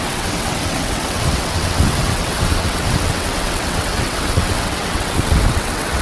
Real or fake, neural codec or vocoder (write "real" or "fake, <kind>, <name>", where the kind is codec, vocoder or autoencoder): fake, vocoder, WaveNeXt